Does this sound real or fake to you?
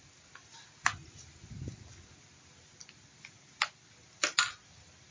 real